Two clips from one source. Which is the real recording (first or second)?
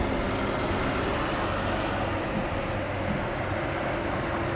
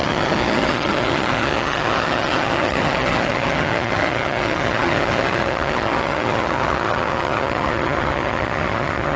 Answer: first